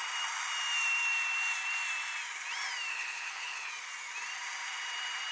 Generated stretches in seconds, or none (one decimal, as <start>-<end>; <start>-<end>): 2.9-3.7